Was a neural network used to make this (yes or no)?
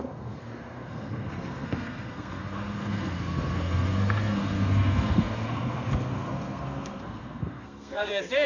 yes